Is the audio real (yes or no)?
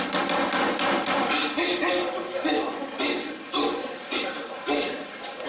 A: yes